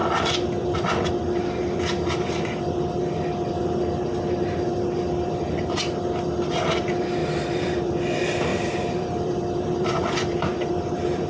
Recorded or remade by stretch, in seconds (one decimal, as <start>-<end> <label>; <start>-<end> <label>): 0.0-7.2 recorded; 7.2-7.8 remade; 7.8-8.5 recorded; 8.5-10.7 remade; 10.7-11.3 recorded